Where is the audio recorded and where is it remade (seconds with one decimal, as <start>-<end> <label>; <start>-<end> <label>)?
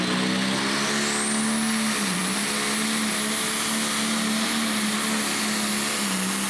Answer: 0.0-6.5 recorded